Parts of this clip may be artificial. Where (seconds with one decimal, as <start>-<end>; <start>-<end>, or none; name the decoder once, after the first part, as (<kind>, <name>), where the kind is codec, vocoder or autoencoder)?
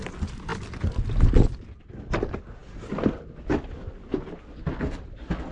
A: none